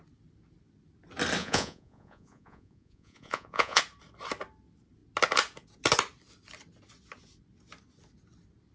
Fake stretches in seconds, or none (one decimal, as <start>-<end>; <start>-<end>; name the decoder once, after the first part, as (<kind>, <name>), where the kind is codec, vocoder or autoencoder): 1.4-3.8 (vocoder, Vocos)

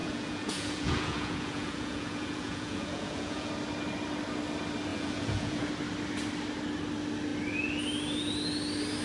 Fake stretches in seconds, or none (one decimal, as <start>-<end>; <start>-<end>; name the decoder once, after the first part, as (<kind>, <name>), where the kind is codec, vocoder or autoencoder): 0.0-3.5 (vocoder, Vocos); 4.9-5.7

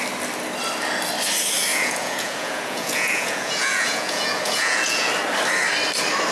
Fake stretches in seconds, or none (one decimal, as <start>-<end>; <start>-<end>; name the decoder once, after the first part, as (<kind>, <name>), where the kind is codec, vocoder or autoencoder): 1.7-5.1 (vocoder, Vocos)

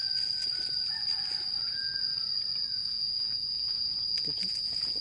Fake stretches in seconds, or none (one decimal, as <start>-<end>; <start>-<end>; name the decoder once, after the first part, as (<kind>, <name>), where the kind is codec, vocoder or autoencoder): 2.8-5.0 (vocoder, Vocos)

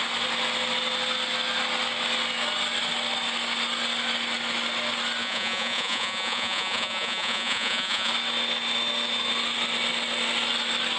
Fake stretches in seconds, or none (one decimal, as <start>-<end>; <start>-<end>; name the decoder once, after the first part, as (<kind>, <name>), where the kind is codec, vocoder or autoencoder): 5.2-8.1 (vocoder, Vocos)